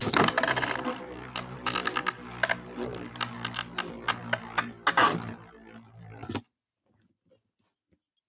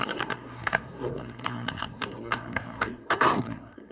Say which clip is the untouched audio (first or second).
first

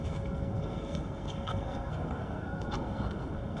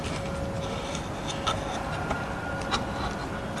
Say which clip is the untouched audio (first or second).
second